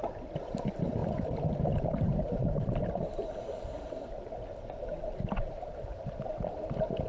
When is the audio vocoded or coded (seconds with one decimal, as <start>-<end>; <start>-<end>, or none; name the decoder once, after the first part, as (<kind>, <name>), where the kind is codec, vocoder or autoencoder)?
0.0-1.0 (vocoder, BigVGAN v2); 5.3-7.1